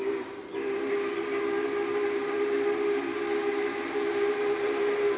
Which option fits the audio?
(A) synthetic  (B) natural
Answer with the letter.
B